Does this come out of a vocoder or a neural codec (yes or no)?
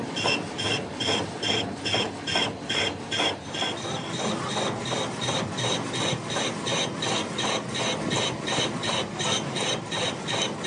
no